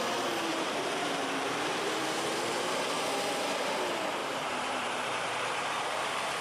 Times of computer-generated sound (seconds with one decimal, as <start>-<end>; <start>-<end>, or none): 0.5-2.8; 4.2-6.4